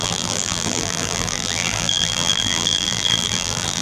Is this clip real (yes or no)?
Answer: no